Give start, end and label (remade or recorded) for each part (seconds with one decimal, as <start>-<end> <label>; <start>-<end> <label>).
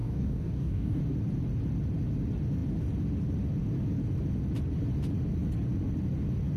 0.0-1.0 remade; 1.0-6.6 recorded